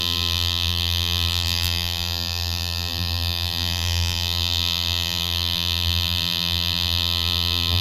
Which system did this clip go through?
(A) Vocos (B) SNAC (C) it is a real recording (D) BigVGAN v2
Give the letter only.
D